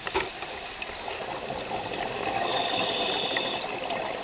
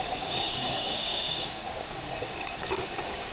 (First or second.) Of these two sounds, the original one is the first